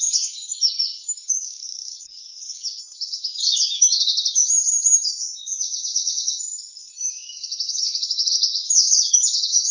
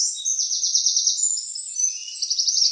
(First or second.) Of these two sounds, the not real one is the first